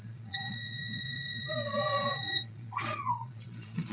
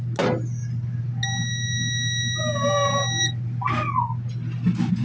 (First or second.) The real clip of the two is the second